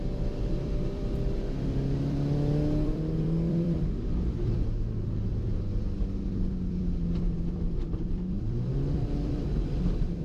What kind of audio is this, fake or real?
fake